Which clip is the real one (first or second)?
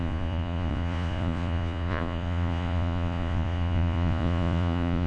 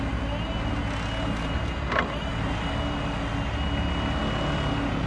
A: second